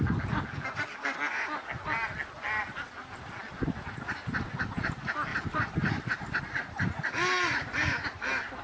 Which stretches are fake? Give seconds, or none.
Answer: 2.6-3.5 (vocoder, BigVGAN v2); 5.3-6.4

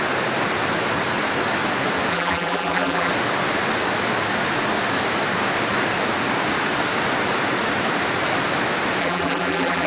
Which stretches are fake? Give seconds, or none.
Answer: 2.1-3.1 (vocoder, BigVGAN v2); 9.0-9.9